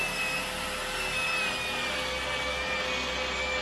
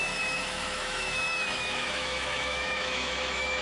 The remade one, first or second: second